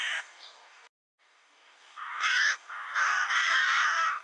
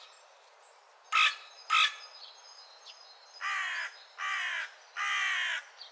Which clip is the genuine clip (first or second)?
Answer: second